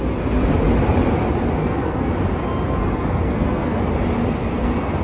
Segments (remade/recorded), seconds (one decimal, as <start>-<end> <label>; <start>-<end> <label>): 0.0-1.6 recorded; 1.6-2.1 remade; 2.1-2.8 recorded; 2.8-3.8 remade; 3.8-4.2 recorded; 4.2-5.0 remade